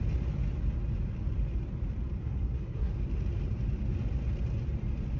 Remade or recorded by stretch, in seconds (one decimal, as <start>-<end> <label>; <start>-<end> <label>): 0.0-2.2 recorded; 2.2-2.9 remade; 2.9-5.2 recorded